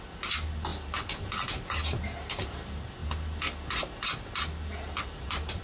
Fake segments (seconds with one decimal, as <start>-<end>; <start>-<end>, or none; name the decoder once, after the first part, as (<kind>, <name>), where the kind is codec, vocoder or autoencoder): none

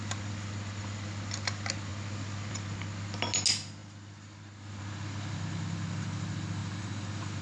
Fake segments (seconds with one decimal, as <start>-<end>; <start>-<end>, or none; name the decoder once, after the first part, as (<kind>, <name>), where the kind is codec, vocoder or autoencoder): none

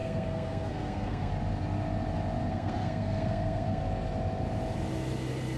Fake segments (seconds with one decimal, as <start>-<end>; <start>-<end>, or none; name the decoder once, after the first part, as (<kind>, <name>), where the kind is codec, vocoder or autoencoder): 0.0-1.3 (codec, SNAC); 2.5-3.8

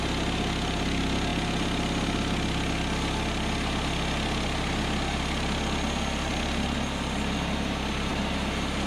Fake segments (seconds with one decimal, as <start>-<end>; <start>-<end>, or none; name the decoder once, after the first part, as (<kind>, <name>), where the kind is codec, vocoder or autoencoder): none

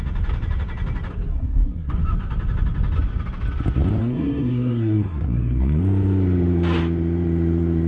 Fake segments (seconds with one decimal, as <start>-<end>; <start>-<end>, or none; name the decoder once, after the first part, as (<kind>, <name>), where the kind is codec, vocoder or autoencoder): 1.3-1.9 (codec, SNAC); 4.0-5.8